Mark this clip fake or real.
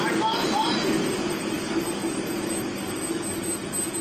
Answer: fake